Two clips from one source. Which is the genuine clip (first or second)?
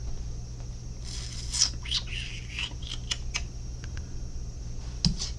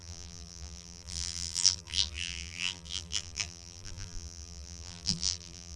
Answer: first